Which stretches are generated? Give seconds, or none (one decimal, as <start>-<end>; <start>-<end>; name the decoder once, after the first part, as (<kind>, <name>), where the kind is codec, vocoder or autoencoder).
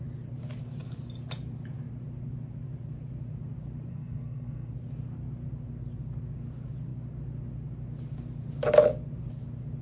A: 3.9-4.7 (codec, SNAC)